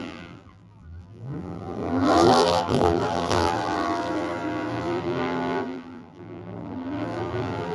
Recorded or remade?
remade